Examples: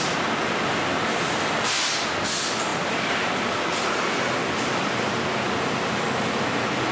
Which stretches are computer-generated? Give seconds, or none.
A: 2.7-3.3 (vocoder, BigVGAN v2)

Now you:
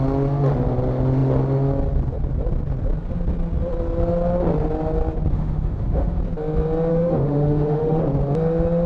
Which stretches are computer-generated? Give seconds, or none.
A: 5.3-6.2 (autoencoder, DAC-VAE); 6.9-8.0

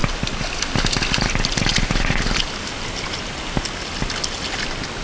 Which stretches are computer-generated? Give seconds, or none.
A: none